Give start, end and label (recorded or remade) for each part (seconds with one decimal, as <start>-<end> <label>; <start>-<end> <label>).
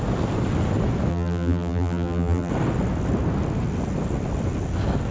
0.0-1.1 recorded; 1.1-2.5 remade; 2.5-5.1 recorded